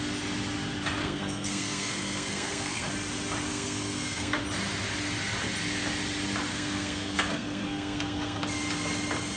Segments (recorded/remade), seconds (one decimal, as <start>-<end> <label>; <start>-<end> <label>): 0.0-1.0 recorded; 1.0-2.9 remade; 2.9-3.5 recorded; 3.5-4.4 remade; 4.4-6.5 recorded; 6.5-8.4 remade; 8.4-9.4 recorded